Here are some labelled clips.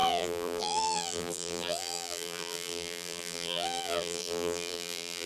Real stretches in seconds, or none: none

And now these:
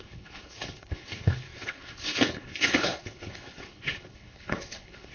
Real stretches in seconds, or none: none

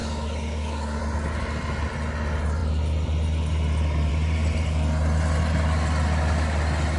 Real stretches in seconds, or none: 1.0-7.0

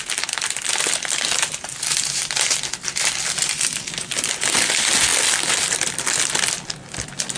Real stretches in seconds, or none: 0.0-7.4

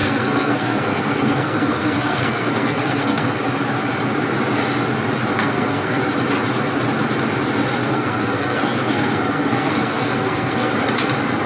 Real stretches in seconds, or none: 3.4-5.3; 6.0-7.8; 10.7-11.5

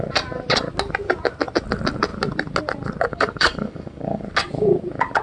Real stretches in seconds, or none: 0.0-3.1; 4.2-5.2